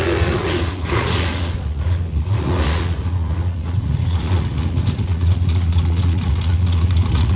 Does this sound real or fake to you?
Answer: fake